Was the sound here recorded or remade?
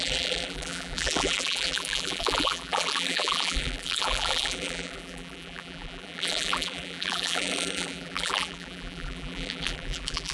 remade